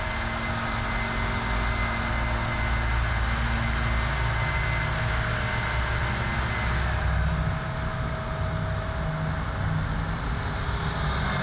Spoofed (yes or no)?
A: no